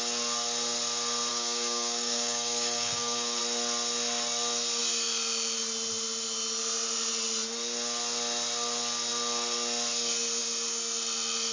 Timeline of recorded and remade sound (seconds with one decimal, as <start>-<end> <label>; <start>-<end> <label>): 0.0-1.3 recorded; 1.3-3.4 remade; 3.4-11.5 recorded